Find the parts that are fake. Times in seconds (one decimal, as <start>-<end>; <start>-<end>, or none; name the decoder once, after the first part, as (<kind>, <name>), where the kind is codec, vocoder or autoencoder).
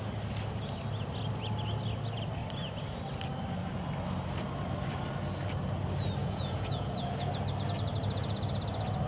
6.2-7.3 (vocoder, Vocos)